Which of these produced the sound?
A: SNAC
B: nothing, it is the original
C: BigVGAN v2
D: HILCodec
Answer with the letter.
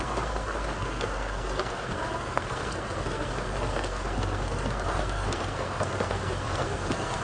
A